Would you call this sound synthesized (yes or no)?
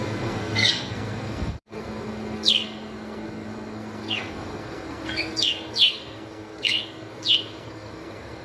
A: yes